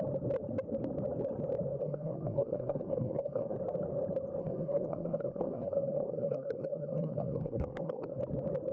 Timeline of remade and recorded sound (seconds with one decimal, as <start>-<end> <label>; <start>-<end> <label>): 0.0-1.8 recorded; 1.8-3.6 remade; 3.6-4.4 recorded; 4.4-8.2 remade; 8.2-8.7 recorded